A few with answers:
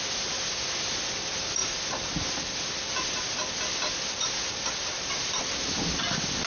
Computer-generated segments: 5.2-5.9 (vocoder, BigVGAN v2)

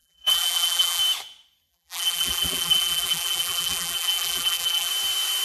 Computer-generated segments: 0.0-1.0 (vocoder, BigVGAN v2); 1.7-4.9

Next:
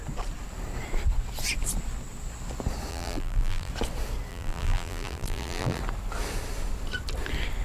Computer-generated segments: 2.9-3.7 (vocoder, BigVGAN v2); 4.3-5.8

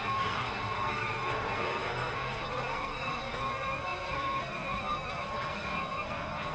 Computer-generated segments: 0.0-6.5 (codec, SNAC)

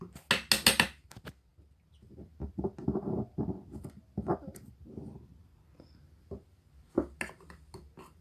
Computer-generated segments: none